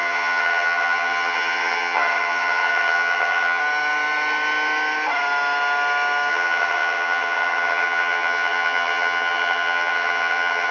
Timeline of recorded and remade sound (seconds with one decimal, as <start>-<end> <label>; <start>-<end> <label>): 0.0-3.6 remade; 3.6-6.3 recorded; 6.3-10.7 remade